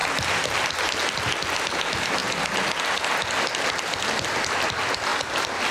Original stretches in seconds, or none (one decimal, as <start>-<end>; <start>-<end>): 0.0-5.7